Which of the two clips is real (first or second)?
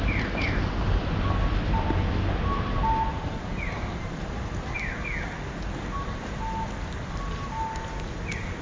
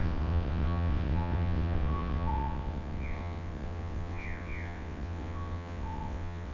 first